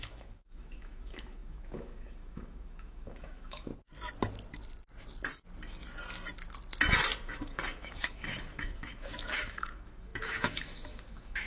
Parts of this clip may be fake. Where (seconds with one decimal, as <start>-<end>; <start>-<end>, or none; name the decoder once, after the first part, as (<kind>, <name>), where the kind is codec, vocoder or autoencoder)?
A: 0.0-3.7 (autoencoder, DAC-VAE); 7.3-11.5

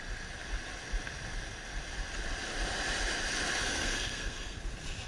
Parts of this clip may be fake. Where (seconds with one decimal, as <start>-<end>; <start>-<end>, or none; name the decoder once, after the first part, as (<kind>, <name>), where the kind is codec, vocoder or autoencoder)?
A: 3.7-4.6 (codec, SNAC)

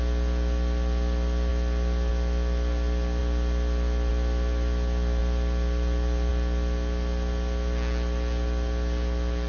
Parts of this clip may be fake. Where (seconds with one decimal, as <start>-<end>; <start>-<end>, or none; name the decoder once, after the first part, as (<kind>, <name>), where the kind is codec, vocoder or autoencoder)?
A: none

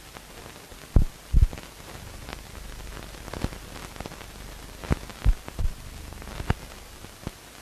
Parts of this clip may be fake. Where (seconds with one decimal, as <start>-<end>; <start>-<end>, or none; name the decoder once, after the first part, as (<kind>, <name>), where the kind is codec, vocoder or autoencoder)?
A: none

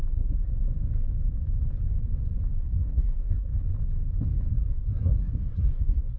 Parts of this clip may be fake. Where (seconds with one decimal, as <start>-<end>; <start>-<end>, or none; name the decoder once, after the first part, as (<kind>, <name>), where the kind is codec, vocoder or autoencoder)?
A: 0.0-0.5 (codec, SNAC); 2.6-3.5; 4.5-6.2